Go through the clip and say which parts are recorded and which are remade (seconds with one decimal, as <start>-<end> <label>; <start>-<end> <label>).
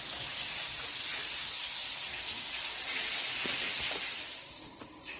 0.0-5.2 recorded